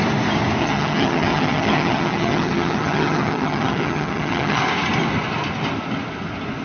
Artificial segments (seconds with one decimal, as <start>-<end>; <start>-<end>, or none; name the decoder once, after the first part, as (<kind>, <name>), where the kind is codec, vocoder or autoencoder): 0.6-4.6 (vocoder, HiFi-GAN)